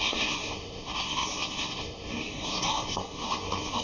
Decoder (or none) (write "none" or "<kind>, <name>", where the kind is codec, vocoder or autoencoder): codec, SNAC